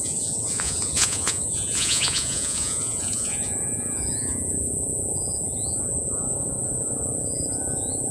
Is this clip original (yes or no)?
no